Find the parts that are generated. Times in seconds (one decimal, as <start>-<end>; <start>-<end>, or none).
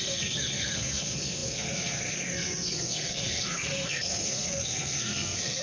0.0-5.6